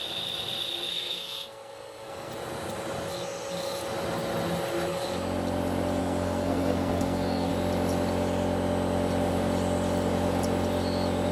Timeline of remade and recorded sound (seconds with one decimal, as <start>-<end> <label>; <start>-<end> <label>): 0.0-0.9 recorded; 0.9-2.3 remade; 2.3-6.0 recorded; 6.0-7.5 remade; 7.5-11.3 recorded